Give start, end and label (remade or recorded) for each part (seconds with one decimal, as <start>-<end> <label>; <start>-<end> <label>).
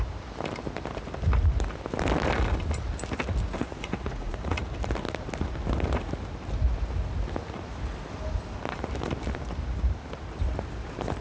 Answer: 0.0-3.6 recorded; 3.6-4.6 remade; 4.6-11.2 recorded